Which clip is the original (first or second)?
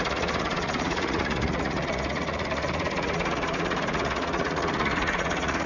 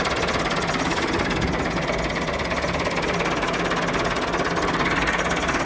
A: second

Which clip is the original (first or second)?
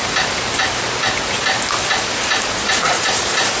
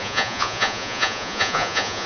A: first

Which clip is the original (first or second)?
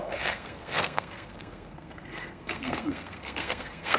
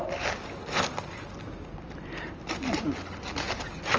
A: second